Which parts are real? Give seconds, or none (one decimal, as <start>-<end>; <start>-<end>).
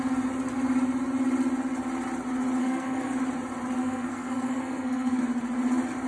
0.0-2.6; 3.2-3.8; 5.2-6.1